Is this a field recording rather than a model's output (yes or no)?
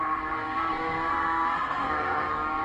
no